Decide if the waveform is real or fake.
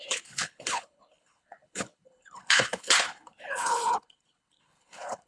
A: fake